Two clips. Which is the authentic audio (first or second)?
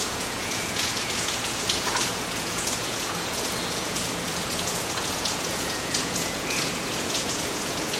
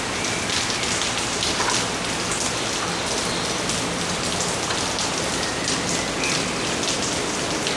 second